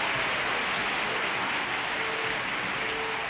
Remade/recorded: recorded